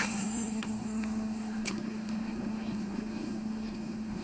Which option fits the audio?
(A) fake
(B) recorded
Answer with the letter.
A